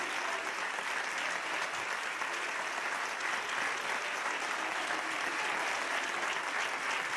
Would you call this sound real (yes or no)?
yes